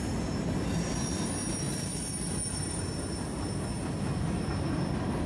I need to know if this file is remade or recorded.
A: recorded